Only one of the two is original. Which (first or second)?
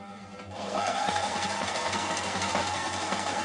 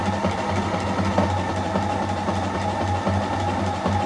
second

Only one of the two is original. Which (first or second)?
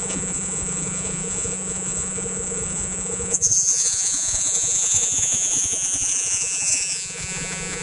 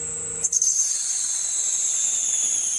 second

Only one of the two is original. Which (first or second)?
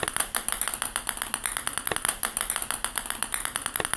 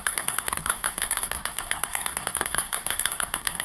first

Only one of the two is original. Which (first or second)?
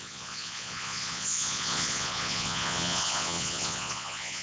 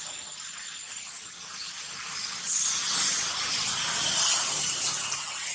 second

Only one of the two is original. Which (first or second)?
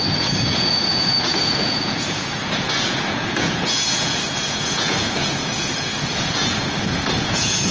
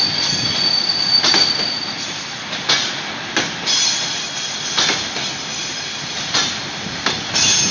second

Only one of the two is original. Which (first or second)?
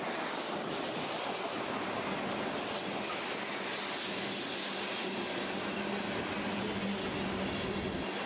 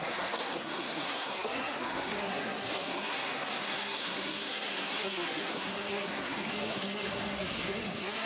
first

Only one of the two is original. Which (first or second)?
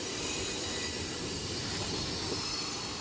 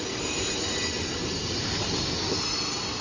second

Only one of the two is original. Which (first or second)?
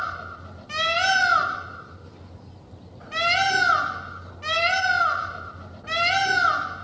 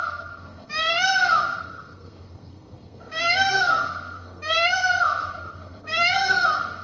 first